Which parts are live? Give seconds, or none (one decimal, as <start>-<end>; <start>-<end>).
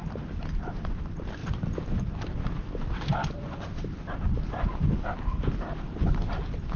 0.5-1.4; 2.0-6.8